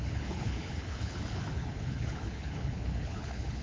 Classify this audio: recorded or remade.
remade